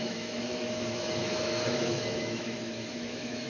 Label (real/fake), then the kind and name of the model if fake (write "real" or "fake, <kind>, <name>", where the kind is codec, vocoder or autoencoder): fake, autoencoder, DAC-VAE